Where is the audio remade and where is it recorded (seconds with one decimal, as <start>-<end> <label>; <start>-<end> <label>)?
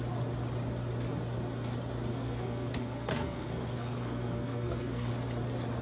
0.0-2.1 recorded; 2.1-5.1 remade; 5.1-5.8 recorded